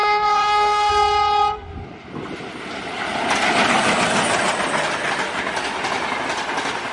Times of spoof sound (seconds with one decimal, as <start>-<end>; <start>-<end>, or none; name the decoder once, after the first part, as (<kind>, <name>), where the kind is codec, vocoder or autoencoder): 0.0-0.9 (autoencoder, DAC-VAE)

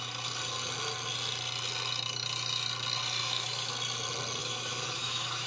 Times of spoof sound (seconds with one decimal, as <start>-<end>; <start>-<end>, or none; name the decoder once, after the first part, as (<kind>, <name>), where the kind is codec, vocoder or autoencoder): 3.2-3.7 (autoencoder, DAC-VAE); 4.4-5.5

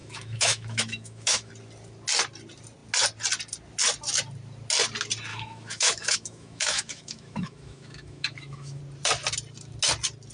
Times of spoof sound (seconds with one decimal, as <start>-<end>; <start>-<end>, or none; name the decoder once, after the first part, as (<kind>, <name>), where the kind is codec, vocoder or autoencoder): 0.0-1.5 (autoencoder, DAC-VAE); 5.3-8.8

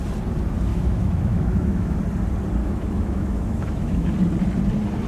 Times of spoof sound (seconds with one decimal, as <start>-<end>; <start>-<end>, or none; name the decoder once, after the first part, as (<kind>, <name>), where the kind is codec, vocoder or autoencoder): 0.7-2.0 (autoencoder, DAC-VAE); 2.6-4.1

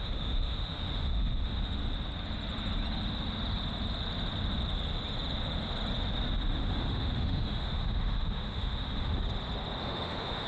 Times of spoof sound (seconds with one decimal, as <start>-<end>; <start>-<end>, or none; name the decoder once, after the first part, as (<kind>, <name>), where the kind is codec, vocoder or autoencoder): 0.0-1.8 (autoencoder, DAC-VAE); 6.6-9.1; 9.8-10.5

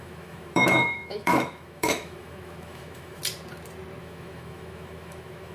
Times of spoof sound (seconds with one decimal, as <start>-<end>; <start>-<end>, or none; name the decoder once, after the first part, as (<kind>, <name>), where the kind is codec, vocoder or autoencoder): 0.0-3.2 (autoencoder, DAC-VAE); 4.0-5.5

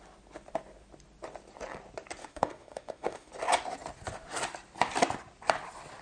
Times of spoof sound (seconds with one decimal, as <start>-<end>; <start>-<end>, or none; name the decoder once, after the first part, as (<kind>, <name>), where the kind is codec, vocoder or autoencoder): 2.2-3.3 (autoencoder, DAC-VAE)